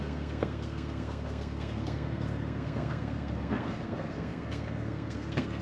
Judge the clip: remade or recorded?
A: remade